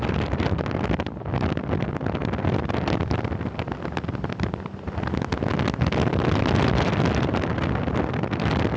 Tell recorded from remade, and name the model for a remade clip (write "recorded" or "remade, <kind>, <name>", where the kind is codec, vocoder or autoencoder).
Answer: recorded